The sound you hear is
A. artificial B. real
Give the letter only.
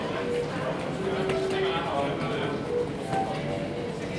B